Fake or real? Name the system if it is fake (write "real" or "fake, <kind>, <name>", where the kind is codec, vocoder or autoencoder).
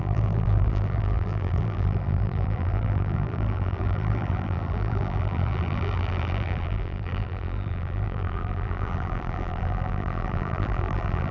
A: fake, vocoder, BigVGAN v2